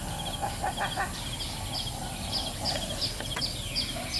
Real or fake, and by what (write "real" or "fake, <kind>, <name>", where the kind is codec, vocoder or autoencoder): real